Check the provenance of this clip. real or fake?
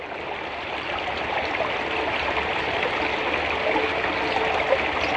real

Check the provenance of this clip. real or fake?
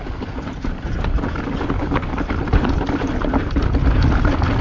real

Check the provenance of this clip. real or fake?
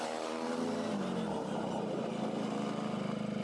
real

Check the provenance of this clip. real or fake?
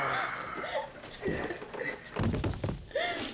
real